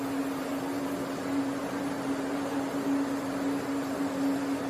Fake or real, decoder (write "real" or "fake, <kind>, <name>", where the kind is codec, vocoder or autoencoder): real